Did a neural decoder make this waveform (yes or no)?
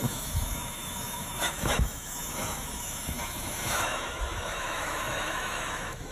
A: yes